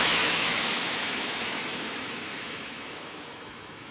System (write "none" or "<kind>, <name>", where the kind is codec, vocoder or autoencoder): autoencoder, DAC-VAE